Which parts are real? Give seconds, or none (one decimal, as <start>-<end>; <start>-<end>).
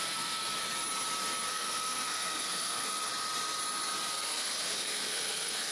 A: 0.4-1.5; 3.1-4.1